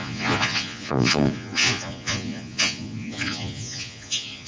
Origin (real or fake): fake